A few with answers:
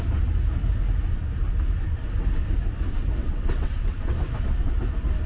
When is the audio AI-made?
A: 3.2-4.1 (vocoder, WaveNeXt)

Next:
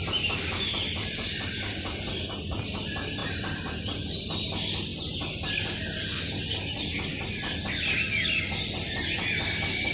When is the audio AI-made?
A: none

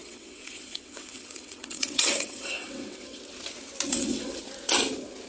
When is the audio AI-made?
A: 0.0-3.2 (vocoder, WaveNeXt); 3.9-4.4

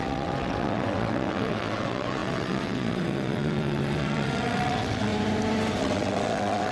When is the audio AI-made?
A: 0.0-5.1 (vocoder, WaveNeXt); 5.8-6.7